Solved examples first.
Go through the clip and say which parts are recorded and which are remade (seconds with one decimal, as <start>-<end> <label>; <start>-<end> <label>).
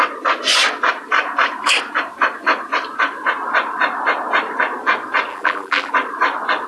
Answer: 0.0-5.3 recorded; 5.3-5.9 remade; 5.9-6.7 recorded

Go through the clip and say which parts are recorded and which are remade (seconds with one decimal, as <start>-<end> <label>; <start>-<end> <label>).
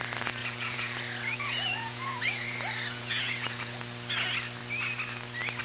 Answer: 0.0-0.4 recorded; 0.4-3.8 remade; 3.8-5.6 recorded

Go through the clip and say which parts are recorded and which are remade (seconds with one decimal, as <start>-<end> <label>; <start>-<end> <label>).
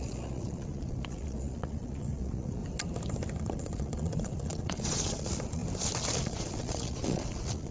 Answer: 0.0-2.6 remade; 2.6-3.4 recorded; 3.4-5.6 remade; 5.6-6.2 recorded; 6.2-7.7 remade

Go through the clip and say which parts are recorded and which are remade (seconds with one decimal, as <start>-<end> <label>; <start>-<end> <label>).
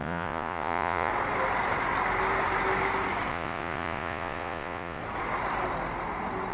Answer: 0.0-1.1 remade; 1.1-3.3 recorded; 3.3-5.0 remade; 5.0-6.5 recorded